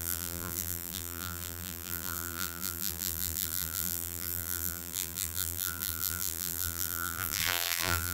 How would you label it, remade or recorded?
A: remade